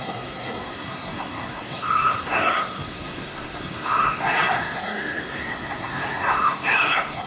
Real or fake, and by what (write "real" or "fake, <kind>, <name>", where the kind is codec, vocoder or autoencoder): fake, codec, SNAC